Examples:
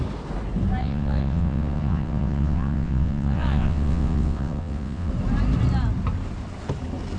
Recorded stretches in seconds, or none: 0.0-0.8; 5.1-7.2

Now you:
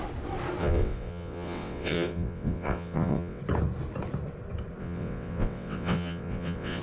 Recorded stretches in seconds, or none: 0.0-0.6; 3.4-4.8

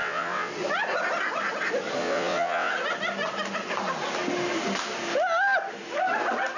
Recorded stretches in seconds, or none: 0.5-2.0; 2.7-6.6

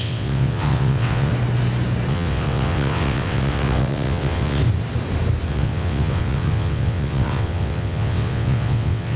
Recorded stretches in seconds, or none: 1.3-2.1; 4.6-5.5

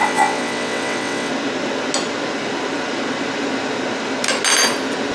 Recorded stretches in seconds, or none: 1.3-5.1

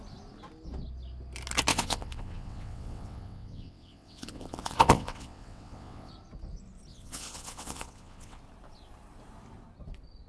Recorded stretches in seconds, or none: 0.0-1.7; 6.1-6.9; 8.4-10.3

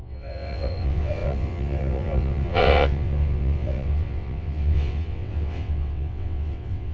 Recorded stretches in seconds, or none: none